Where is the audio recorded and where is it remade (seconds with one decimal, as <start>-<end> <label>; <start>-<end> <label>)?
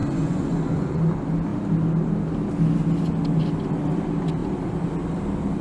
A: 0.0-1.0 remade; 1.0-5.6 recorded